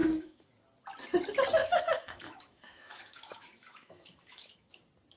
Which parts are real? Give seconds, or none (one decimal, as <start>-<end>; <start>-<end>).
0.5-1.6; 4.7-5.2